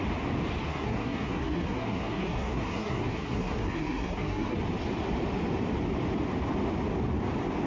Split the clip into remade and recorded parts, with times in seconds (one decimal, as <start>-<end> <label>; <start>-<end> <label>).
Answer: 0.0-0.7 recorded; 0.7-4.6 remade; 4.6-7.7 recorded

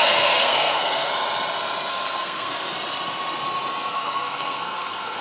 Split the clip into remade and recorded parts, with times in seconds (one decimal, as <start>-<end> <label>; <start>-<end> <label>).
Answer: 0.0-1.1 remade; 1.1-1.9 recorded; 1.9-2.5 remade; 2.5-3.9 recorded; 3.9-5.2 remade

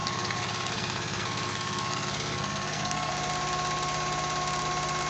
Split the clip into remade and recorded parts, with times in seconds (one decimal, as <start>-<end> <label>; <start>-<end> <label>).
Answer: 0.0-3.1 remade; 3.1-5.1 recorded

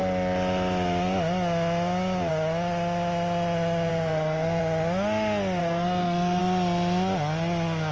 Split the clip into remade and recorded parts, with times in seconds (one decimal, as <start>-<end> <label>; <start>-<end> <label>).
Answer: 0.0-3.9 recorded; 3.9-4.6 remade; 4.6-5.6 recorded; 5.6-6.4 remade; 6.4-7.9 recorded

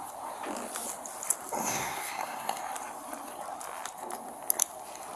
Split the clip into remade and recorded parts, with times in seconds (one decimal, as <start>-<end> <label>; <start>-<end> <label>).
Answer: 0.0-1.6 recorded; 1.6-2.6 remade; 2.6-5.2 recorded

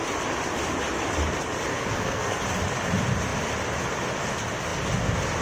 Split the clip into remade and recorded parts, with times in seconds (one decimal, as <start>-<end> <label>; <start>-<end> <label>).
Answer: 0.0-1.7 recorded; 1.7-2.4 remade; 2.4-5.4 recorded